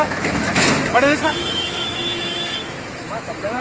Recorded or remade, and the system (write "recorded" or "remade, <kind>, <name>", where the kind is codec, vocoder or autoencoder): remade, autoencoder, DAC-VAE